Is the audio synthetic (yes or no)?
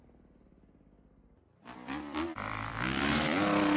yes